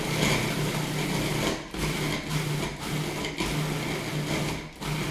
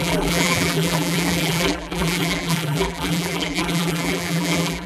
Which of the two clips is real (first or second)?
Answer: first